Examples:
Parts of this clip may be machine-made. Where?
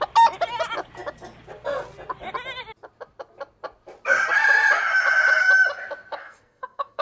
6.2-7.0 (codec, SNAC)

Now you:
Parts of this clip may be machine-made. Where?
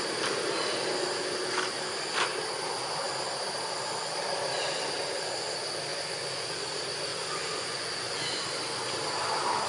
5.9-6.6 (vocoder, Vocos); 7.1-8.4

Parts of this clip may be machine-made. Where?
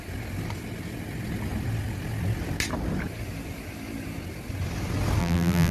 5.2-5.7 (vocoder, BigVGAN v2)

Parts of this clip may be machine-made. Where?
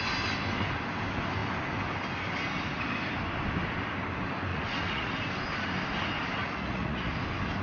4.5-5.2 (vocoder, Vocos); 6.4-7.1